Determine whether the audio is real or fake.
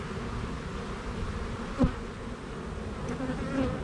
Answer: real